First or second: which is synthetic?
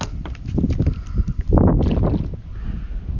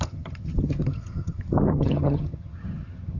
second